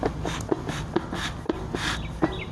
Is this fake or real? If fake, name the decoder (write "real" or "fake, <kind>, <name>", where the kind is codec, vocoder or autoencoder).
real